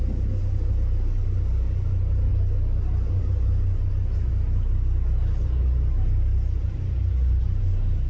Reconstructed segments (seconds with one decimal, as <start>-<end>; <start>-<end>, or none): none